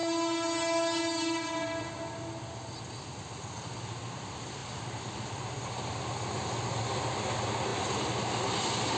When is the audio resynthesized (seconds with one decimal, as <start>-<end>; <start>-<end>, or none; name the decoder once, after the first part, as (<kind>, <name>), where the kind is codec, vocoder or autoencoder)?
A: none